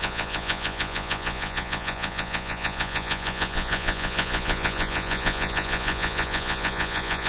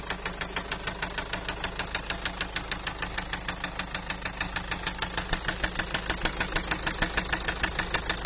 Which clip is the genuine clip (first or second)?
second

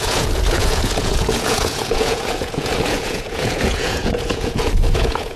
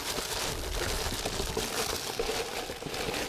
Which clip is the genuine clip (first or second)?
second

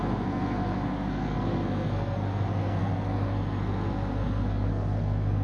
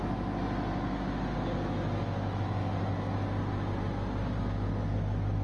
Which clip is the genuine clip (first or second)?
second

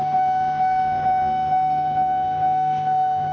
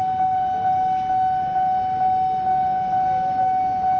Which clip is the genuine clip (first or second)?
second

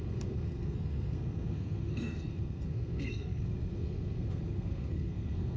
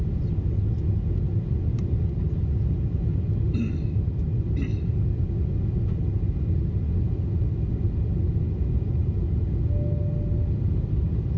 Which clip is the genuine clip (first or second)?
second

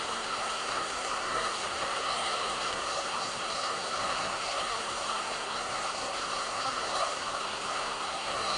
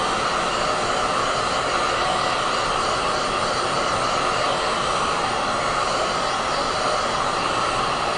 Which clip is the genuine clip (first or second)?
second